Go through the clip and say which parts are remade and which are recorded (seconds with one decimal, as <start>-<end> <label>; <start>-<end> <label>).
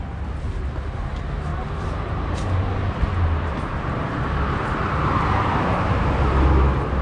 0.0-7.0 recorded